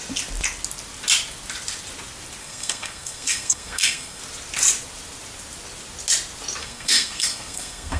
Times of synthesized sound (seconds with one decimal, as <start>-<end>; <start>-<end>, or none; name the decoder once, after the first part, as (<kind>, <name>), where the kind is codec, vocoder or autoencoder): 2.4-4.2 (codec, SNAC); 6.6-8.0